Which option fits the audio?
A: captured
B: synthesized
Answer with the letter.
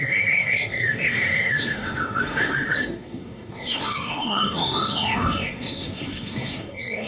B